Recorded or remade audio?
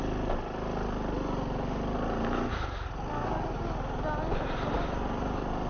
recorded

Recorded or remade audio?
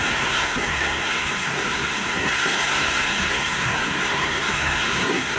remade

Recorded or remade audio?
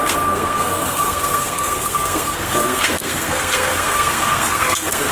remade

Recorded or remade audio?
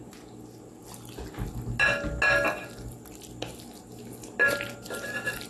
recorded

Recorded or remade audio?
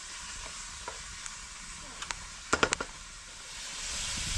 recorded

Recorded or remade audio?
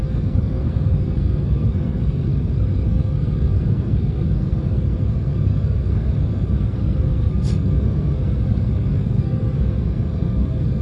remade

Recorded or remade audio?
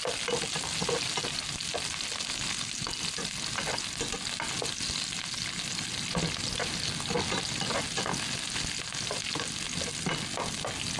recorded